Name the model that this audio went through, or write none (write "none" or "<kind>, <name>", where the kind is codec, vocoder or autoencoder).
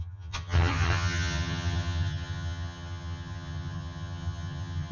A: vocoder, HiFi-GAN